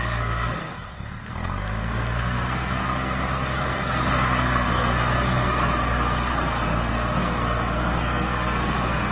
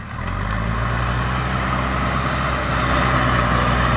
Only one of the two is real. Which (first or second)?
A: second